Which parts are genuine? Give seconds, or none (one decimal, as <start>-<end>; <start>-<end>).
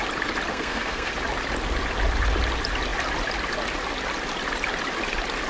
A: 0.0-0.5; 1.1-5.5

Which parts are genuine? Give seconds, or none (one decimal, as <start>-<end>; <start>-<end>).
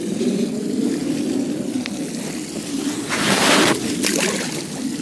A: 0.0-5.0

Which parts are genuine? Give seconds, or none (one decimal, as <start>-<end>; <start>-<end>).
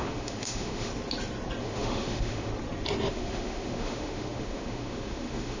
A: 0.9-1.6; 2.5-3.1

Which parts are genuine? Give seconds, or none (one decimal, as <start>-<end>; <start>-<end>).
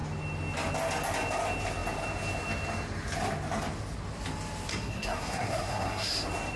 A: 0.0-4.7; 6.1-6.6